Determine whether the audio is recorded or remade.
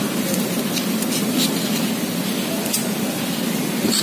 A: recorded